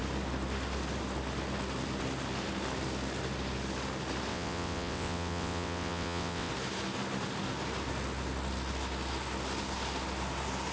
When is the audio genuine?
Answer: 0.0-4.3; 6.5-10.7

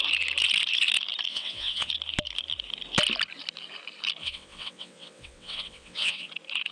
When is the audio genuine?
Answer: 0.0-1.3; 1.9-4.2; 6.3-6.7

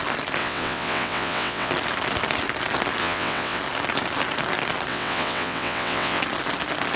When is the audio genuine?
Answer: 0.0-0.4; 1.7-3.0; 3.6-4.9; 6.2-7.0